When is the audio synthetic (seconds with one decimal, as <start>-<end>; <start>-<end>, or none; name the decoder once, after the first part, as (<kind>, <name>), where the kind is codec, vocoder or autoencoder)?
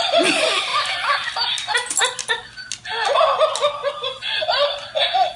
none